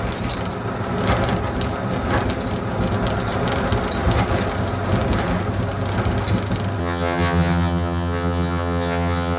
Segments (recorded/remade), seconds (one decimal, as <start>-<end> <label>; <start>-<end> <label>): 0.0-6.8 recorded; 6.8-9.4 remade